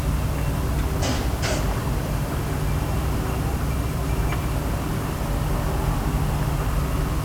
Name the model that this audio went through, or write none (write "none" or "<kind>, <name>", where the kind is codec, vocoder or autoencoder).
none